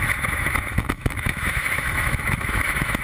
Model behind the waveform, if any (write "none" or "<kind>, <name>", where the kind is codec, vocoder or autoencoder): autoencoder, DAC-VAE